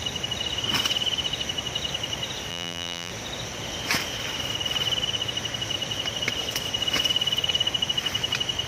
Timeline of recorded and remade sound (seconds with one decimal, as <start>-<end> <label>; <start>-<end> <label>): 0.0-2.5 recorded; 2.5-3.1 remade; 3.1-8.7 recorded